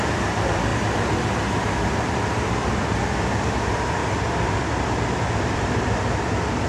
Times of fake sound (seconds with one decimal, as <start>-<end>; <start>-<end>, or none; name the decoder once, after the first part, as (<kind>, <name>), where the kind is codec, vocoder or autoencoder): 0.0-0.7 (vocoder, BigVGAN v2); 2.0-4.0; 5.2-6.7